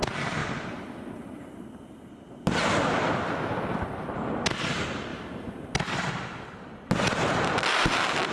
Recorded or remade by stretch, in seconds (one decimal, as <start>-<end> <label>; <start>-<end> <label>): 0.0-8.3 recorded